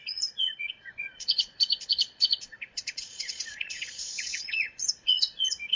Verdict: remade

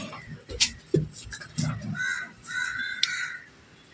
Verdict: recorded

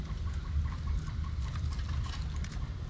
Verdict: recorded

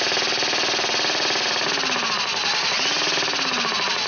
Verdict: recorded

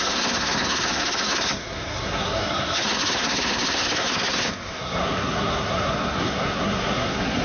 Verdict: remade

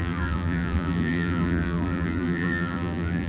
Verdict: remade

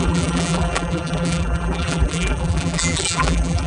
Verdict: remade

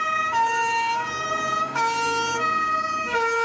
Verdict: remade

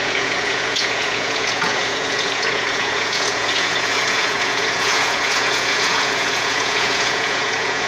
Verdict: remade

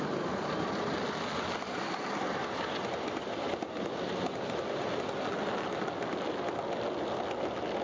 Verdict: recorded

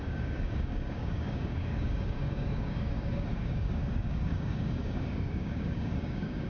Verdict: remade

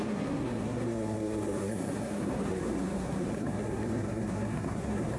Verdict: remade